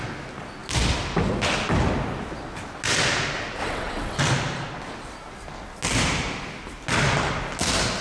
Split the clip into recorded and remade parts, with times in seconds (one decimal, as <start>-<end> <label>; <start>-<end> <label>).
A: 0.0-3.6 recorded; 3.6-4.2 remade; 4.2-8.0 recorded